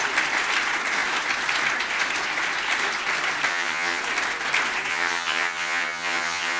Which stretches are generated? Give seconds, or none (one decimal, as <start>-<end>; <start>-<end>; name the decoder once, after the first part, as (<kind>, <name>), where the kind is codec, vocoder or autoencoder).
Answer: 3.5-4.0 (vocoder, HiFi-GAN); 4.9-6.6